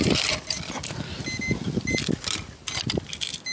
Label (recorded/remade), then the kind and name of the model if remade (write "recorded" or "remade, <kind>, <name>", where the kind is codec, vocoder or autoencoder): recorded